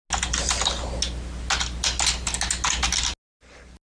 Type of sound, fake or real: real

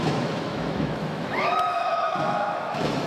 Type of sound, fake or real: fake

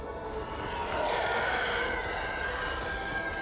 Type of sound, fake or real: real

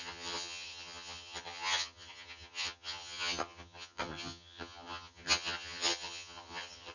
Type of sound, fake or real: fake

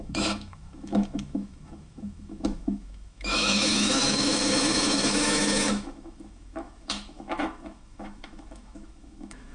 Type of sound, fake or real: fake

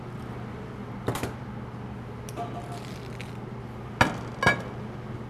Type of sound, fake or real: real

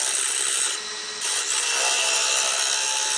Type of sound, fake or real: real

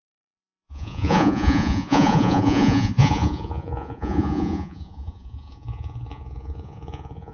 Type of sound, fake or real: fake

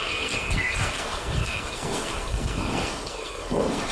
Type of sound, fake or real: fake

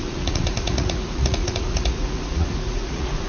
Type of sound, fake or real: fake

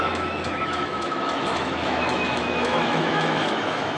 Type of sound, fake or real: fake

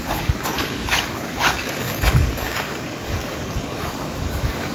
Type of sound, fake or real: fake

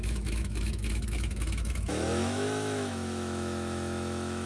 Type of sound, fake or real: fake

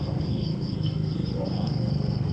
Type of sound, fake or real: fake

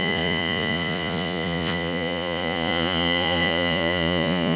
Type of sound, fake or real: fake